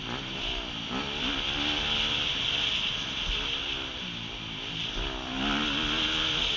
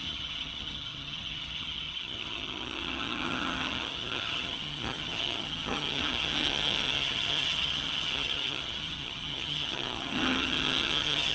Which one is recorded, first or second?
first